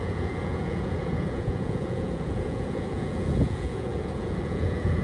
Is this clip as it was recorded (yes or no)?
no